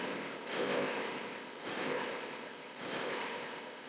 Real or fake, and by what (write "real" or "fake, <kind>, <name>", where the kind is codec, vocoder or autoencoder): fake, codec, ZipCodec